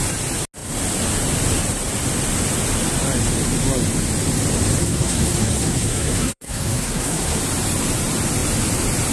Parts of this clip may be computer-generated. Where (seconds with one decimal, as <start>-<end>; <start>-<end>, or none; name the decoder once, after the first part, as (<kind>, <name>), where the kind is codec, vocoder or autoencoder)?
4.8-7.4 (codec, SNAC)